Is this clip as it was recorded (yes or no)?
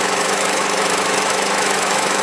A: no